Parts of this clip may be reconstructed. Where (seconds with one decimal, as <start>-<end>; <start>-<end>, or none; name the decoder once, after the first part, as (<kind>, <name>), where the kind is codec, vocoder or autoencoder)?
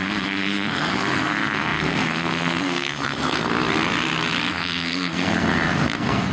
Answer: 0.0-3.5 (codec, SNAC); 4.5-6.3